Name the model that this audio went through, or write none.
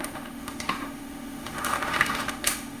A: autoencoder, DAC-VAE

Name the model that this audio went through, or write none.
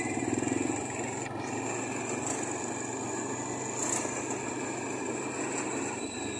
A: none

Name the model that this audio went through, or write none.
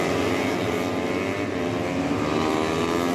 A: none